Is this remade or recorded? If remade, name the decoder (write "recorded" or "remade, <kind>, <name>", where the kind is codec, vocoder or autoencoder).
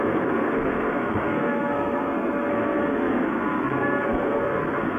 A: remade, codec, SNAC